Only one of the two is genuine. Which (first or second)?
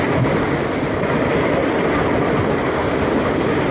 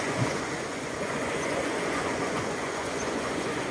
first